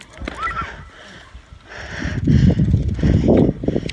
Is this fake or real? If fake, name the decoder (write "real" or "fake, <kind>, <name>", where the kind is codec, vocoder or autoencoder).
real